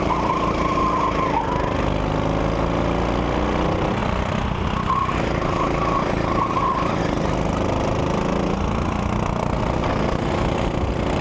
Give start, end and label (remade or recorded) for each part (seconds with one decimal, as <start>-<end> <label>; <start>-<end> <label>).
0.0-4.0 recorded; 4.0-7.0 remade; 7.0-11.2 recorded